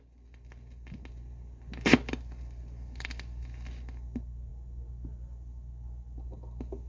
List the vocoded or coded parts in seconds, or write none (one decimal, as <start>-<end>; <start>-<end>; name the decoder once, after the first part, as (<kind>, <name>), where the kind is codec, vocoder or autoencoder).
none